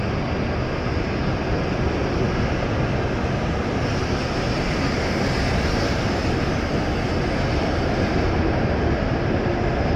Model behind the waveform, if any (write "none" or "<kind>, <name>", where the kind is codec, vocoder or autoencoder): none